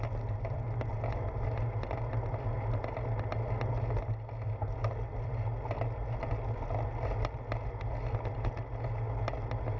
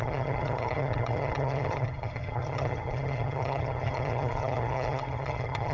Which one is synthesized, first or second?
second